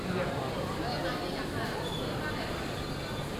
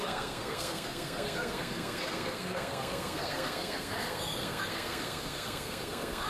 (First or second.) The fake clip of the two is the second